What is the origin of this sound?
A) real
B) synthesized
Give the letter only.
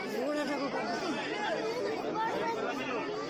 A